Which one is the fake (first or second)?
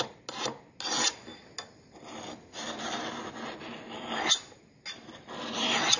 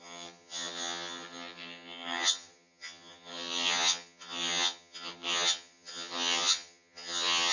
second